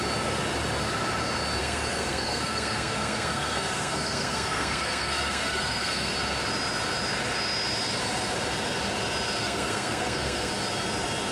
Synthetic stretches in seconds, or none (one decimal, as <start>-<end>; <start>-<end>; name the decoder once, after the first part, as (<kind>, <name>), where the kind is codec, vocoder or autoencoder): 1.6-6.1 (codec, SNAC); 9.4-10.5